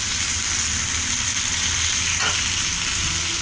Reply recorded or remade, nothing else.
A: recorded